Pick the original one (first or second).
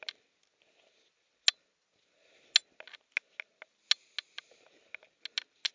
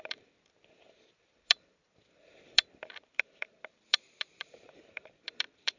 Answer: first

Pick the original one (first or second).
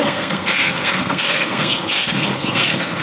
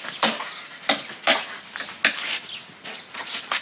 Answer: second